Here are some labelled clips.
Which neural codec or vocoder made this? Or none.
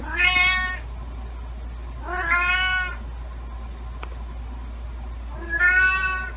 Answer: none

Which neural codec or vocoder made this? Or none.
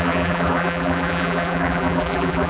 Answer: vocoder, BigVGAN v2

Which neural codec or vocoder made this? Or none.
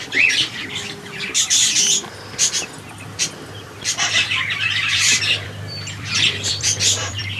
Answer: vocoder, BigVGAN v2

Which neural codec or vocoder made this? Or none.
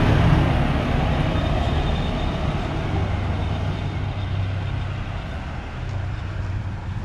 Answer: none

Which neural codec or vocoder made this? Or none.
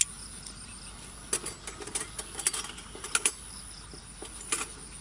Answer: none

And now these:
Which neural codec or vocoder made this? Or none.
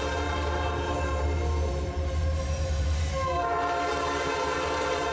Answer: vocoder, BigVGAN v2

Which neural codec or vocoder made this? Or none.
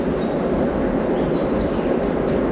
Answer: none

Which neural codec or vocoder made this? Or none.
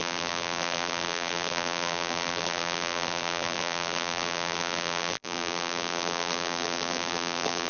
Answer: vocoder, BigVGAN v2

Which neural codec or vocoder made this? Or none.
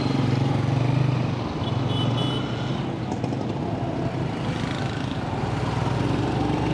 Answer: none